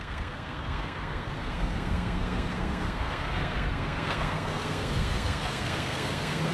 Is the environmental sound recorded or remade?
remade